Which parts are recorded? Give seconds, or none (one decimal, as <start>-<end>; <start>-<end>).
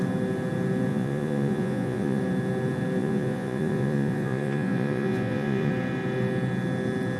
0.0-0.9; 2.2-3.0; 5.7-7.2